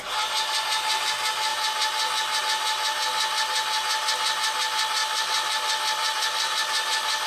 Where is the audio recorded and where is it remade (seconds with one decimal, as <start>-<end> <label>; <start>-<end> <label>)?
0.0-5.0 recorded; 5.0-7.3 remade

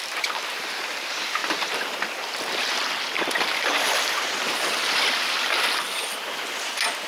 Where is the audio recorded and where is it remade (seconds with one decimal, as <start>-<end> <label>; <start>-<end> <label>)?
0.0-7.1 recorded

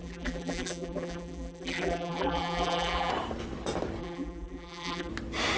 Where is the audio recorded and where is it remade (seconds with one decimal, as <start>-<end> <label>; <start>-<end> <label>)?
0.0-3.1 remade; 3.1-4.0 recorded; 4.0-5.1 remade; 5.1-5.6 recorded

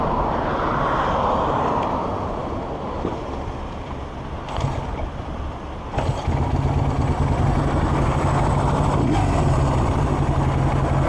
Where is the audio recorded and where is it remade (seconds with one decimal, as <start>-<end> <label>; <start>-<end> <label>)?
0.0-11.1 recorded